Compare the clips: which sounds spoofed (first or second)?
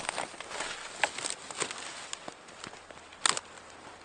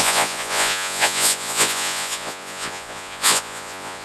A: second